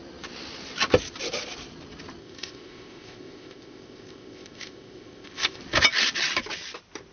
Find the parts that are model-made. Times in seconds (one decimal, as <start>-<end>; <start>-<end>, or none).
2.2-5.6